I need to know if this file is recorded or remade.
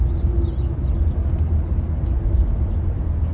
recorded